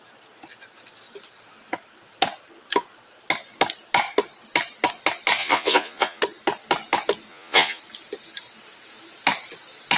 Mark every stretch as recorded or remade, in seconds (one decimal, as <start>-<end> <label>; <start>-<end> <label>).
0.0-5.4 recorded; 5.4-6.2 remade; 6.2-7.3 recorded; 7.3-7.8 remade; 7.8-10.0 recorded